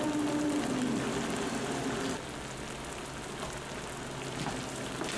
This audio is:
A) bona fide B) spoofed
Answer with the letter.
A